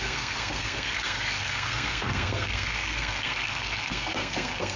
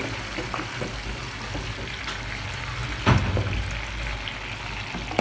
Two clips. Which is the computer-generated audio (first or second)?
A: first